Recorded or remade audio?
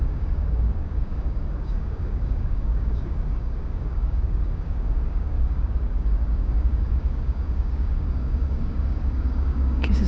remade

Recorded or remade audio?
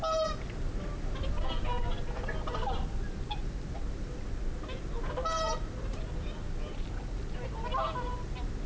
recorded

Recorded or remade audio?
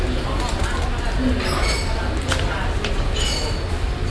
recorded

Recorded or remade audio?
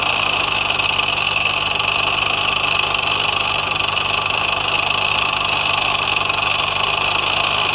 recorded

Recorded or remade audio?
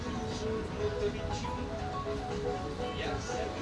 recorded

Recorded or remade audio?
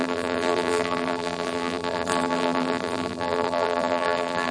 remade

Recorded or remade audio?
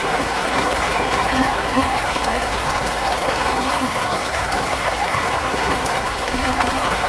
remade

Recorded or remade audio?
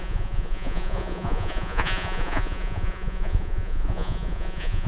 remade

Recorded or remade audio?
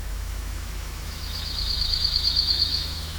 remade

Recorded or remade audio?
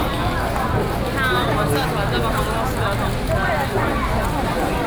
recorded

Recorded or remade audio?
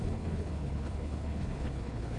remade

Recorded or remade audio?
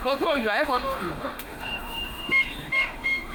remade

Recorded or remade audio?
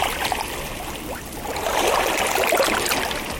recorded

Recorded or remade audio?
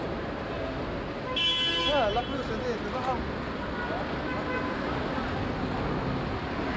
recorded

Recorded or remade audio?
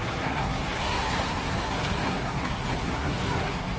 remade